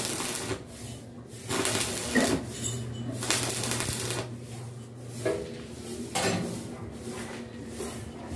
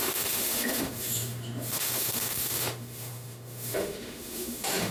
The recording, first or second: first